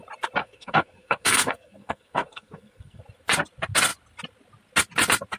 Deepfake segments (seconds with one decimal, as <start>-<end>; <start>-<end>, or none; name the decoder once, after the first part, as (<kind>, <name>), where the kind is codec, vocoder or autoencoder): 0.4-3.0 (codec, SNAC)